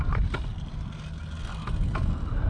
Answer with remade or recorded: recorded